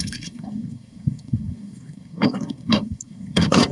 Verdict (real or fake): fake